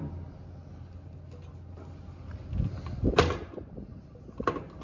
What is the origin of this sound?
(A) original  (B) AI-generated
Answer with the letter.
A